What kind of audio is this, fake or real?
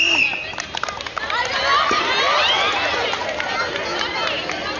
real